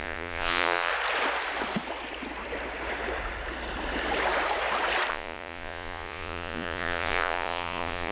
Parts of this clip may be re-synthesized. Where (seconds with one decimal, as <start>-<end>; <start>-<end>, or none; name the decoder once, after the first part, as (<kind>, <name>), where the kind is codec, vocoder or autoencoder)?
0.0-0.9 (vocoder, Vocos); 5.1-8.1